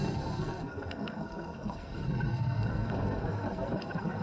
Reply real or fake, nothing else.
fake